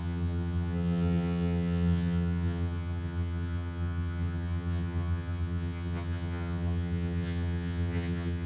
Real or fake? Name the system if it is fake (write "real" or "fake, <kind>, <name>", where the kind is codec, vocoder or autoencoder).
fake, vocoder, HiFi-GAN